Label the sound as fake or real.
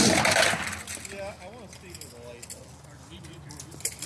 real